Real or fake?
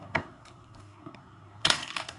fake